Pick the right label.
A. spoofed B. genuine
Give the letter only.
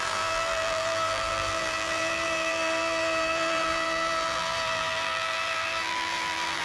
A